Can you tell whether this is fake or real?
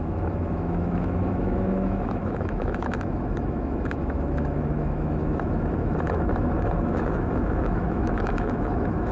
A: fake